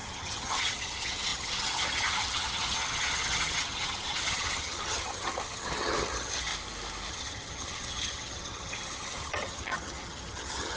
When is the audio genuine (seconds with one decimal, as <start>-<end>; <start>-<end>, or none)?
6.5-7.1